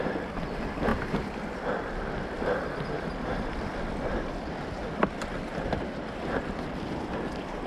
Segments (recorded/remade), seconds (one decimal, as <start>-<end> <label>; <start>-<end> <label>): 0.0-7.7 recorded